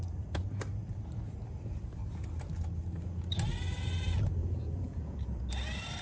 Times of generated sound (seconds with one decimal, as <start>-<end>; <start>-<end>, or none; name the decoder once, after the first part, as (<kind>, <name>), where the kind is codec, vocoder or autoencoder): 4.4-5.5 (vocoder, Vocos)